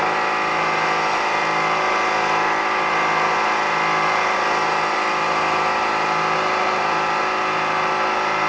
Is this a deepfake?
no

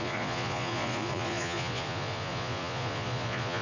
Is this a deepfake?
yes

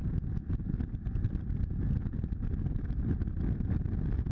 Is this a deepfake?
no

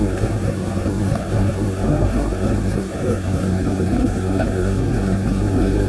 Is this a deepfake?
yes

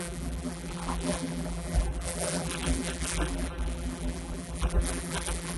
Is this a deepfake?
yes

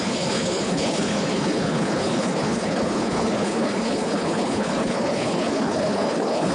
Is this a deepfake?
yes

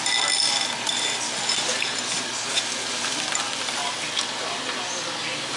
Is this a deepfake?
no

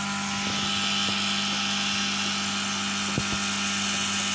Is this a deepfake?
no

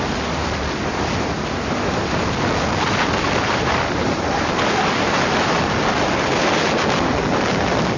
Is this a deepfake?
no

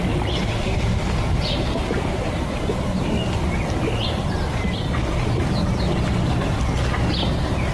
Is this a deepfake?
no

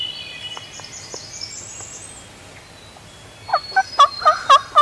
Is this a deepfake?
no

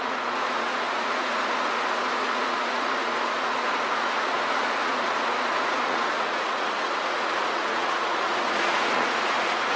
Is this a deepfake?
yes